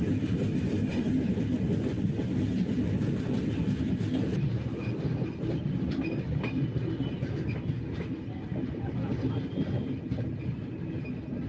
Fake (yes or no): no